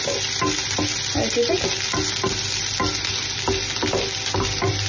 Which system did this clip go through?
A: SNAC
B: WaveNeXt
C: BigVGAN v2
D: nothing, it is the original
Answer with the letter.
D